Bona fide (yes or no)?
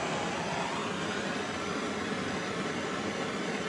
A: yes